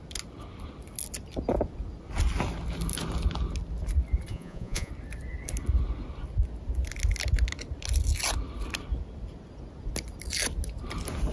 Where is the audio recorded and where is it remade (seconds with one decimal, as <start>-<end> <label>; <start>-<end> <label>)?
0.0-4.3 recorded; 4.3-4.9 remade; 4.9-11.3 recorded